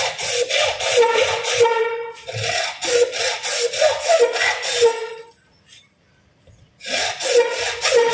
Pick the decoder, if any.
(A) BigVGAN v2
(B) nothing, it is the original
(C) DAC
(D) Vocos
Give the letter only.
A